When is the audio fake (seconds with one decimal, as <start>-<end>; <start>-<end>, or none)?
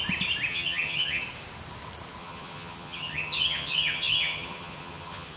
0.5-1.2; 2.2-5.4